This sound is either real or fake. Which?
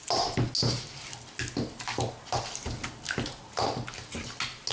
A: real